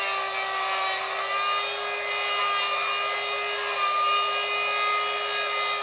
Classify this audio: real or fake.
real